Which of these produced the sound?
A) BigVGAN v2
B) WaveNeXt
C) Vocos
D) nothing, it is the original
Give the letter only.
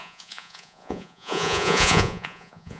C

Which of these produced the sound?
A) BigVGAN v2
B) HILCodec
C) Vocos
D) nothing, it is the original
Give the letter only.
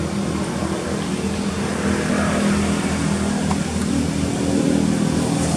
D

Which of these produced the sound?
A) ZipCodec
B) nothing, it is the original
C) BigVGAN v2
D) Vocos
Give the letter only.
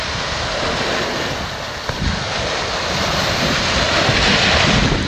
B